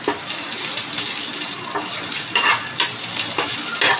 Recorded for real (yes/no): yes